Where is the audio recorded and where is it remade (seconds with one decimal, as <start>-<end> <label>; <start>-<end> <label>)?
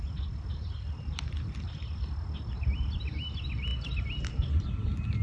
0.0-5.2 recorded